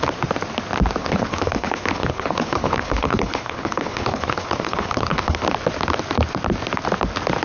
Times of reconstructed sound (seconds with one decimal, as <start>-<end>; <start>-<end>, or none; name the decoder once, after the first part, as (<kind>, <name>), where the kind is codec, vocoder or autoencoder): 1.0-5.4 (codec, HILCodec)